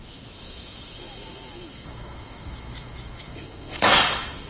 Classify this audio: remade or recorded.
remade